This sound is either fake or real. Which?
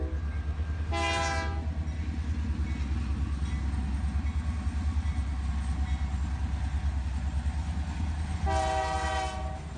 real